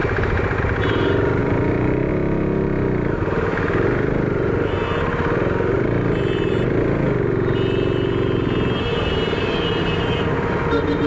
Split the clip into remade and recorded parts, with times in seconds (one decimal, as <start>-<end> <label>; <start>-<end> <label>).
0.0-1.4 recorded; 1.4-2.1 remade; 2.1-11.1 recorded